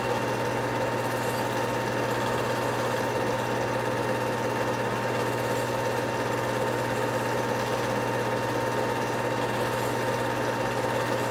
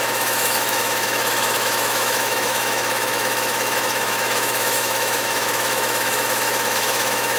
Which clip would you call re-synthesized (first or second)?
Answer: second